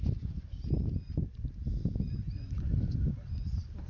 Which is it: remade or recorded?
recorded